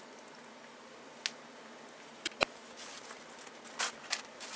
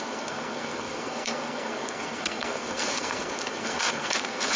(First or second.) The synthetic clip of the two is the second